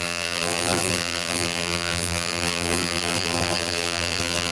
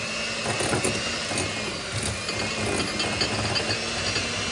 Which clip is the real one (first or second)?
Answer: second